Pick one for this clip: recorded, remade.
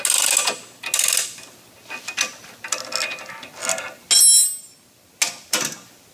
recorded